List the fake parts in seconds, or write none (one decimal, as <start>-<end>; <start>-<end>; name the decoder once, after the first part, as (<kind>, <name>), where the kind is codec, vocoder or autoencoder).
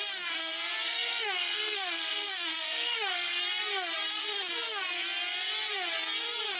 0.4-3.4 (codec, SNAC)